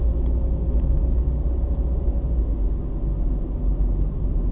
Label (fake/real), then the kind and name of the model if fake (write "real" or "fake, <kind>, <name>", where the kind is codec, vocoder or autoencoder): real